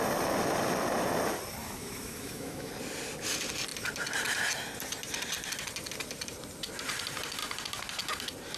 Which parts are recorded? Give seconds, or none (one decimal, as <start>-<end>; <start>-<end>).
0.0-1.6; 2.7-8.6